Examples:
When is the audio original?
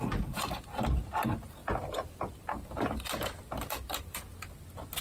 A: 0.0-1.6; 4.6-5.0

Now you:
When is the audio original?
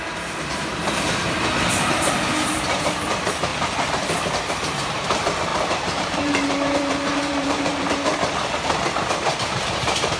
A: 3.5-4.5; 8.1-9.3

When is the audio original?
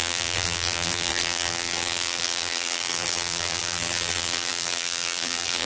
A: none